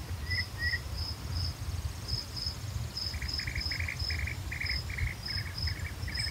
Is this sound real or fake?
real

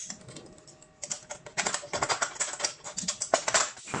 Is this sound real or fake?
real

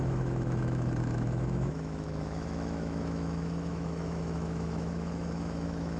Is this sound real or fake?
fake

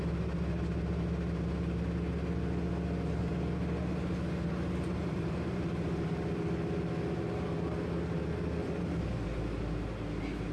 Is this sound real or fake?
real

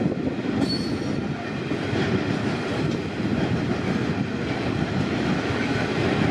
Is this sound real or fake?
real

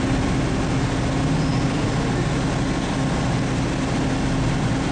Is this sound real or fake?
real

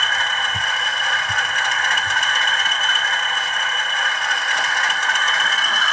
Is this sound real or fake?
real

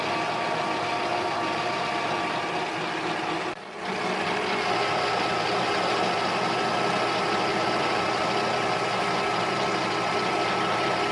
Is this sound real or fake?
real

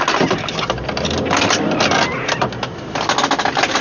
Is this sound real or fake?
real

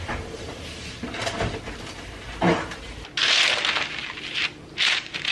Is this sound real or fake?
real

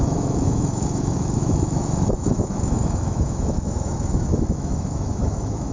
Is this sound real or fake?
fake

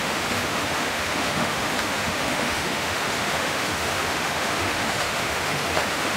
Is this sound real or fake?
fake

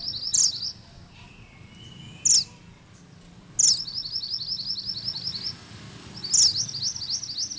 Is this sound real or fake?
real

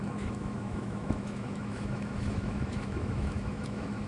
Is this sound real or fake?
fake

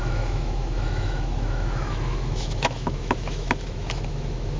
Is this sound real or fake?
fake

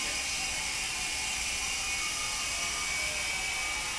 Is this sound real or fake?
real